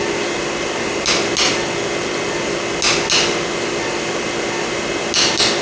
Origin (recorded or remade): recorded